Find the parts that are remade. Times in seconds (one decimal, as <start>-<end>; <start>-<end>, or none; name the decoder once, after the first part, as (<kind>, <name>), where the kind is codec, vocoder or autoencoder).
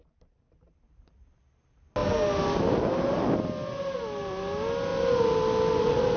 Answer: none